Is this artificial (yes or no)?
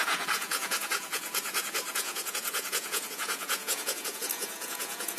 yes